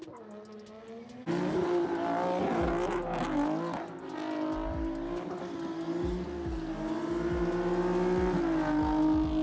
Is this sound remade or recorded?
recorded